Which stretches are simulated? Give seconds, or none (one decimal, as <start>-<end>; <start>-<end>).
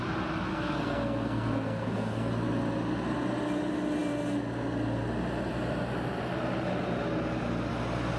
0.5-2.3